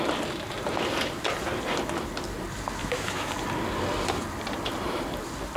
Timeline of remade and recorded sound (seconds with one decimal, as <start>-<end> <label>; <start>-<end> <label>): 0.0-2.8 recorded; 2.8-3.3 remade; 3.3-5.6 recorded